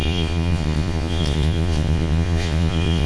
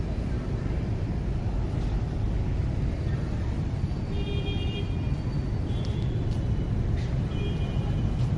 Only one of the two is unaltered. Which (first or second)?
second